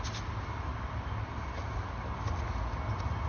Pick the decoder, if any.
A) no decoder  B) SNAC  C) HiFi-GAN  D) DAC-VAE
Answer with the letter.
A